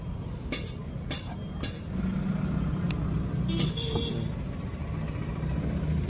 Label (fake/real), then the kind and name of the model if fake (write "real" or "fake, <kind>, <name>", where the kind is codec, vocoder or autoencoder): real